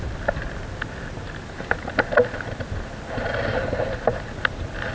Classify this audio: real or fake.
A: real